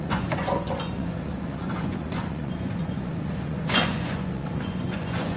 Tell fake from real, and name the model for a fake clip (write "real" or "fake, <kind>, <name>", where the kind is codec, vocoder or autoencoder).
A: fake, vocoder, Vocos